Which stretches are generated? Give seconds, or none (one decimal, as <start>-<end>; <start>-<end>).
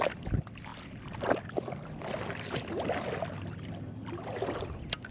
none